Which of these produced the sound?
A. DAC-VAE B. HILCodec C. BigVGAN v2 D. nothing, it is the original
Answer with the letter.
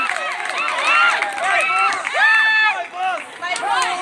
D